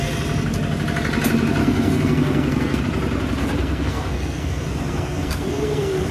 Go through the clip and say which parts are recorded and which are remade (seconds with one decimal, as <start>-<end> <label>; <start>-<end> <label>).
0.0-1.6 recorded; 1.6-2.8 remade; 2.8-3.4 recorded; 3.4-6.1 remade